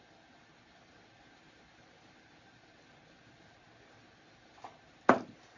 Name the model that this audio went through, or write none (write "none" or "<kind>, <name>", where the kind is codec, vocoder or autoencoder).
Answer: none